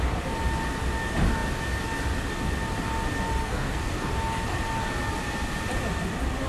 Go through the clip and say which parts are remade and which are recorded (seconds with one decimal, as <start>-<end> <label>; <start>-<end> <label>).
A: 0.0-3.4 recorded; 3.4-4.1 remade; 4.1-6.5 recorded